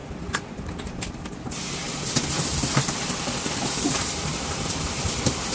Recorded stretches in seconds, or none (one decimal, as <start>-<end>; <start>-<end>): 1.3-1.8; 5.1-5.5